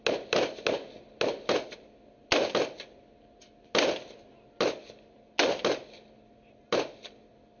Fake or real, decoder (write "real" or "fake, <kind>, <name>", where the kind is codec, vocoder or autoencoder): real